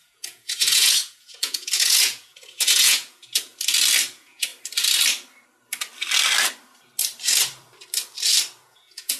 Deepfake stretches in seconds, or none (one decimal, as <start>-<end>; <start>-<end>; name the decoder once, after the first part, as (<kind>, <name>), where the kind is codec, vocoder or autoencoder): 0.0-3.5 (vocoder, Vocos); 4.1-4.5; 8.6-9.2